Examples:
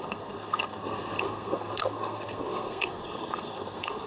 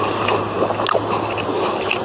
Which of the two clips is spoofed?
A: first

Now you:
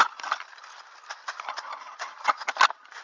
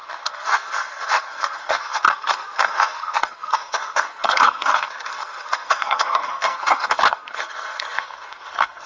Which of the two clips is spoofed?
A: second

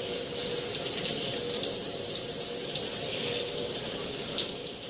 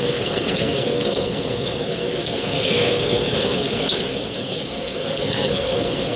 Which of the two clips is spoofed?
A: second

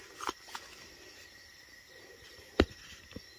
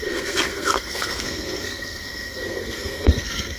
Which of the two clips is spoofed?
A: second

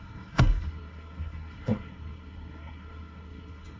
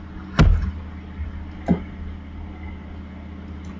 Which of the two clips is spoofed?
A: first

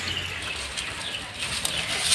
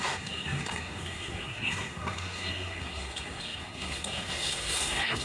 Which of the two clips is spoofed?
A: second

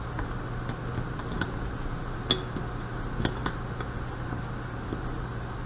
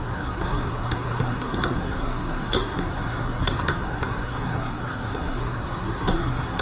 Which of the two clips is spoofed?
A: second